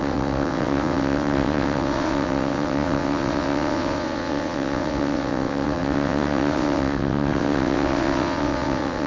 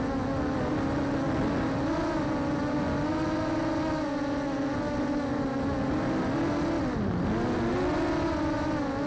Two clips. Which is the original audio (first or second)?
second